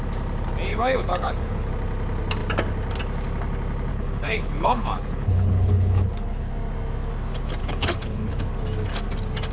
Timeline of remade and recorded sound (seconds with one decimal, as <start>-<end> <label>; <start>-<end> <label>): 0.0-0.7 recorded; 0.7-1.7 remade; 1.7-3.9 recorded; 3.9-6.5 remade; 6.5-7.6 recorded; 7.6-8.4 remade; 8.4-9.5 recorded

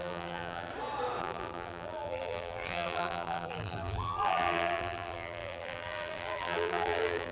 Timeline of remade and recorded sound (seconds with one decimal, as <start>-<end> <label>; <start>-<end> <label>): 0.0-0.7 remade; 0.7-1.2 recorded; 1.2-7.3 remade

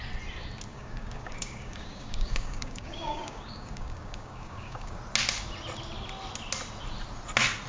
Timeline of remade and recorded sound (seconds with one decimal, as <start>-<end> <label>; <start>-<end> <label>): 0.0-0.7 recorded; 0.7-5.0 remade; 5.0-7.7 recorded

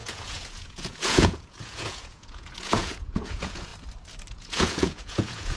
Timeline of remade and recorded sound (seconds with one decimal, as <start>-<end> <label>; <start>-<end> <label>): 0.0-3.7 remade; 3.7-4.3 recorded; 4.3-5.6 remade

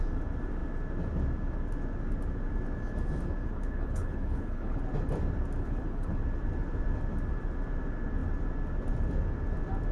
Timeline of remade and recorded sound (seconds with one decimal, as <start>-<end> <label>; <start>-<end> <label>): 0.0-3.4 recorded; 3.4-4.8 remade; 4.8-5.6 recorded; 5.6-6.2 remade; 6.2-9.9 recorded